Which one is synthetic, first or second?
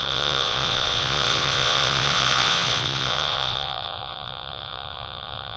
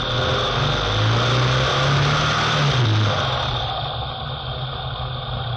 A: first